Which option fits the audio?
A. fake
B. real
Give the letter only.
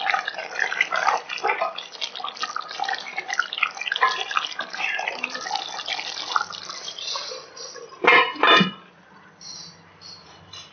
A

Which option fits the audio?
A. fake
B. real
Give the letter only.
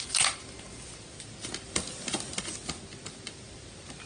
B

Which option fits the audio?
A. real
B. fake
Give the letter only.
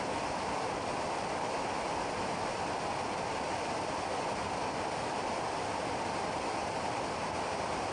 B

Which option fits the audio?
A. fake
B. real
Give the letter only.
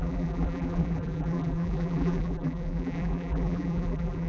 A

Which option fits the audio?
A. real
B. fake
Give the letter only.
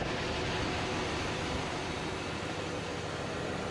A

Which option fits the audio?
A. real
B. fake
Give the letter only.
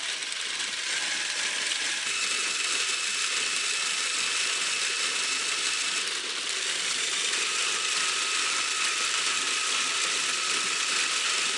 B